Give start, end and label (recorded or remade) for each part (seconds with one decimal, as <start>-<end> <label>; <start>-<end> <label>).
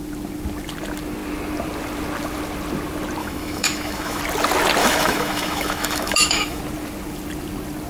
0.0-3.2 recorded; 3.2-4.2 remade; 4.2-4.8 recorded; 4.8-6.6 remade; 6.6-7.9 recorded